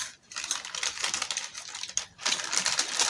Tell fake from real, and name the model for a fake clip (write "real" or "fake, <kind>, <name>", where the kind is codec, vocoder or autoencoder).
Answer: real